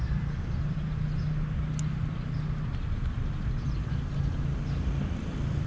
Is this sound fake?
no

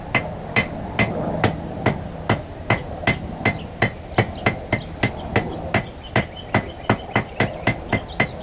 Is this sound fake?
no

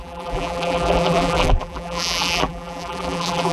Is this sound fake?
yes